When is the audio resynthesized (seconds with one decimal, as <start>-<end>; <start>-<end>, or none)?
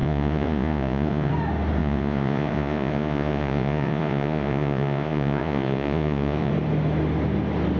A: 0.0-1.3; 1.8-6.5